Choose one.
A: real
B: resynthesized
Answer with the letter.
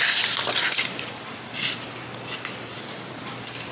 B